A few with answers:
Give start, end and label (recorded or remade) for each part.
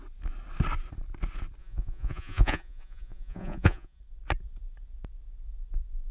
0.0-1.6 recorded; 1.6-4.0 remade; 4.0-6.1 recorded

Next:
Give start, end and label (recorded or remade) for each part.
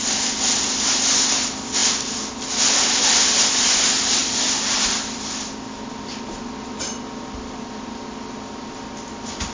0.0-1.8 recorded; 1.8-3.0 remade; 3.0-4.2 recorded; 4.2-8.8 remade; 8.8-9.5 recorded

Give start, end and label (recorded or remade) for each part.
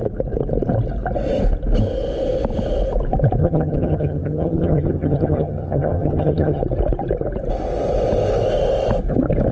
0.0-3.4 recorded; 3.4-6.6 remade; 6.6-9.5 recorded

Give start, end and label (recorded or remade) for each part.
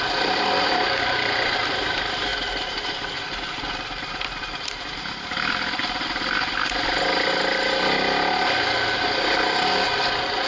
0.0-10.5 recorded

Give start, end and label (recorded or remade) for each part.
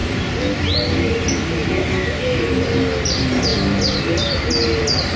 0.0-0.6 remade; 0.6-5.2 recorded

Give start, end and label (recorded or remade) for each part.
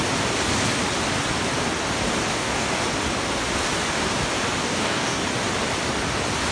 0.0-2.3 recorded; 2.3-2.8 remade; 2.8-4.6 recorded; 4.6-5.2 remade; 5.2-6.5 recorded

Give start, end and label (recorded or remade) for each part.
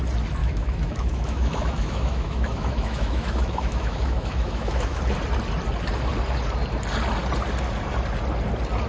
0.0-0.4 recorded; 0.4-5.0 remade; 5.0-8.9 recorded